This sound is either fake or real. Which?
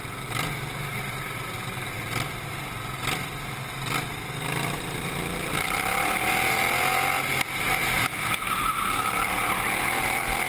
real